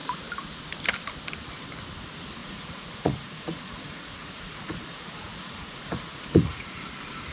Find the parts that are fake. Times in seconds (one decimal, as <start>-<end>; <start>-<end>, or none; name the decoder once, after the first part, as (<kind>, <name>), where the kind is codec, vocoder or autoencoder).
2.4-6.8 (vocoder, Vocos)